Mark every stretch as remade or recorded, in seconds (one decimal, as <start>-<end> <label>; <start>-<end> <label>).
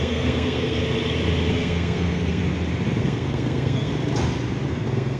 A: 0.0-0.8 remade; 0.8-1.5 recorded; 1.5-2.4 remade; 2.4-3.0 recorded; 3.0-3.9 remade; 3.9-4.7 recorded; 4.7-5.2 remade